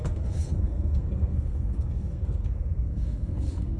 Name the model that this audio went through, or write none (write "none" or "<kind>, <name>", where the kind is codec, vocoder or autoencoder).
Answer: codec, SNAC